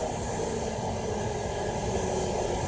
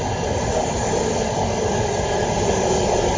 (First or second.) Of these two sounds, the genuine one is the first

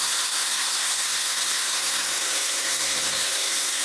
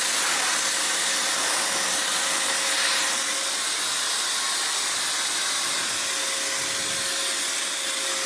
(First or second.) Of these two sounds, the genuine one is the second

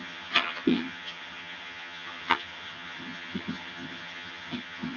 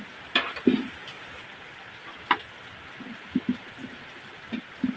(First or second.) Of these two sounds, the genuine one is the second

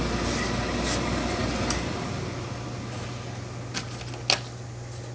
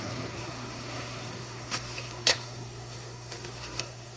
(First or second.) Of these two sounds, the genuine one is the first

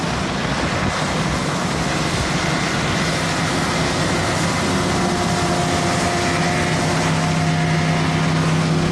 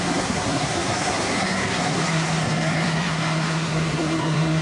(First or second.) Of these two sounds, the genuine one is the first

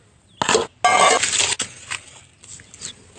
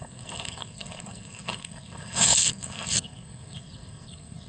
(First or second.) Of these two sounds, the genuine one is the first